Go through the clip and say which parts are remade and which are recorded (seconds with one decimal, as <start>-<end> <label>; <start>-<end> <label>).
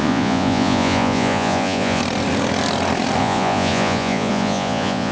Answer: 0.0-2.0 remade; 2.0-3.2 recorded; 3.2-5.1 remade